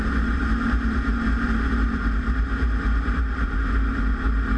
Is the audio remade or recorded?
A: remade